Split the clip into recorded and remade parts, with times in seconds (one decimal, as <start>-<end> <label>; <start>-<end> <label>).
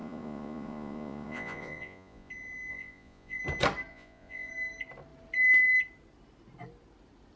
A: 0.0-2.3 remade; 2.3-2.7 recorded; 2.7-3.4 remade; 3.4-3.9 recorded; 3.9-4.5 remade; 4.5-7.4 recorded